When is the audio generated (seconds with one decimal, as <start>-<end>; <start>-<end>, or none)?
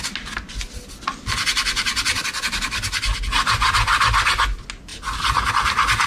none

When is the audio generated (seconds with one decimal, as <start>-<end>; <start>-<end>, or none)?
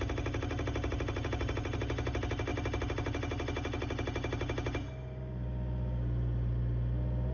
none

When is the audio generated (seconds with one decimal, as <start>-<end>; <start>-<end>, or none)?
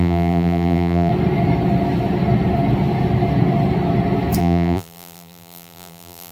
0.0-1.1; 4.4-6.3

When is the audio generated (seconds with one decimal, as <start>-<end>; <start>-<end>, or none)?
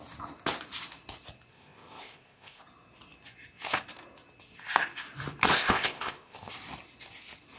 1.5-2.6; 5.5-6.5